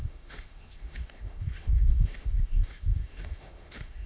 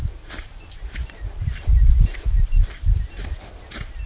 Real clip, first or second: second